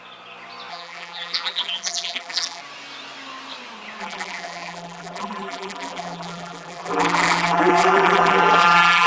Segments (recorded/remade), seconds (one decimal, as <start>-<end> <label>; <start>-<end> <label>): 0.0-0.7 recorded; 0.7-2.6 remade; 2.6-4.0 recorded; 4.0-9.1 remade